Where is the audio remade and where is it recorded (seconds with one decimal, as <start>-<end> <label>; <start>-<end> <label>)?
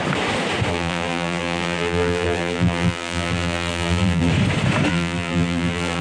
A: 0.0-0.7 recorded; 0.7-4.3 remade; 4.3-4.9 recorded; 4.9-6.0 remade